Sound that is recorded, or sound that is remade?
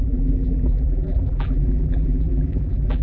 remade